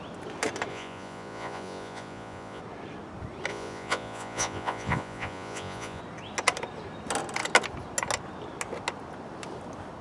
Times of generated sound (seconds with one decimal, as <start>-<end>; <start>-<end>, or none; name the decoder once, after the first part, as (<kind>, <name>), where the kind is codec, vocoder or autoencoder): 0.7-2.6 (vocoder, Vocos); 3.5-6.0